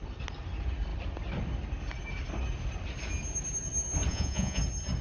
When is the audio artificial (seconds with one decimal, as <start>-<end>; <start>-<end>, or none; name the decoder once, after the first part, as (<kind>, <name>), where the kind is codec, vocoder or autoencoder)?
4.1-4.6 (vocoder, Vocos)